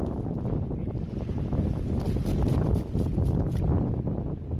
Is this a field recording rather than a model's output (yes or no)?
yes